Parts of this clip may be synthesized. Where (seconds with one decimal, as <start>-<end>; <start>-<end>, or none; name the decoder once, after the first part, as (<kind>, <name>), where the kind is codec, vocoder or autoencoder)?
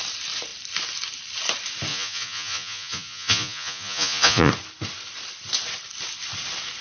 1.9-4.5 (vocoder, Vocos)